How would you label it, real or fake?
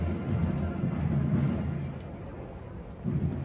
real